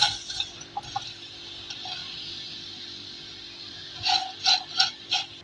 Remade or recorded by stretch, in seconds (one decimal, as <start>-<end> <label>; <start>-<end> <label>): 0.0-5.4 recorded

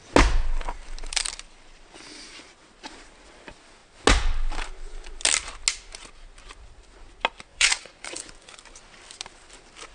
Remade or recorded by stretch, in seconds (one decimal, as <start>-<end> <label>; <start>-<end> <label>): 0.0-7.5 recorded; 7.5-8.5 remade; 8.5-9.9 recorded

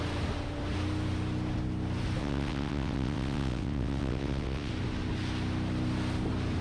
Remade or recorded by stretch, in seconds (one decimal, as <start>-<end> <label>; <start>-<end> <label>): 0.0-2.2 recorded; 2.2-4.7 remade; 4.7-6.6 recorded

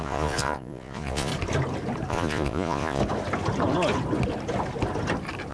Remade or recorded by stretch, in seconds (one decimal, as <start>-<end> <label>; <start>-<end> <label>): 0.0-1.3 remade; 1.3-2.1 recorded; 2.1-3.0 remade; 3.0-5.5 recorded